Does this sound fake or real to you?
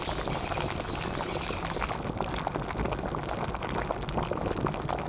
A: real